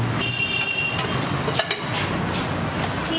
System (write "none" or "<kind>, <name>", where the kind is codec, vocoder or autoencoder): none